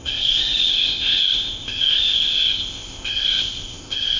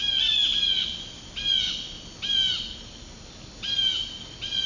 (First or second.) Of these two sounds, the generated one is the first